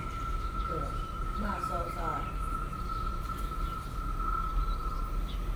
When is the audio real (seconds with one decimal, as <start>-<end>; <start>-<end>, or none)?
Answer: 1.5-4.5; 5.1-5.6